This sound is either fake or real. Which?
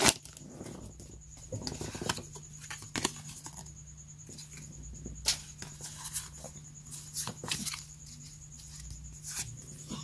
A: real